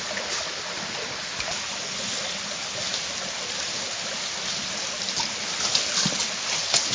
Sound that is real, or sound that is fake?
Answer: real